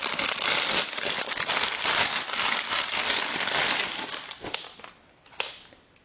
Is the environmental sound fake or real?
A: real